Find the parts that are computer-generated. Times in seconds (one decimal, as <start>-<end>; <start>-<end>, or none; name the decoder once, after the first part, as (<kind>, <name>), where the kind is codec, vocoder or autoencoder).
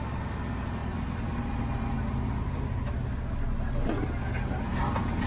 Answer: none